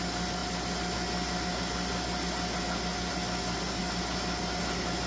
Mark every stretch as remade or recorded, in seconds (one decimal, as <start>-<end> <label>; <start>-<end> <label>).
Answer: 0.0-5.1 recorded